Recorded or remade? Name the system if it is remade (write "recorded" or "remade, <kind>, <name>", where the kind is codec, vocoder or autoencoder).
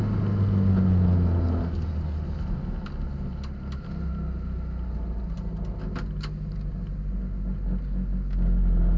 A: recorded